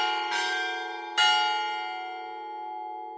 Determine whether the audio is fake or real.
real